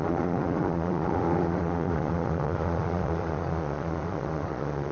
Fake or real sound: fake